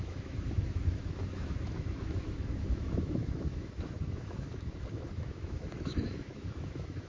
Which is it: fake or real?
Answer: fake